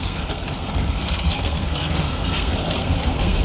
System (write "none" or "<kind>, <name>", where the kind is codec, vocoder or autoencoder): codec, SNAC